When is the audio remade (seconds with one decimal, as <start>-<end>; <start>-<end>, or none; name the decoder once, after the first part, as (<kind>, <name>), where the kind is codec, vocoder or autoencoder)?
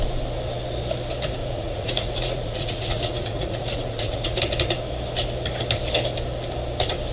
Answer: 1.4-4.4 (vocoder, Vocos)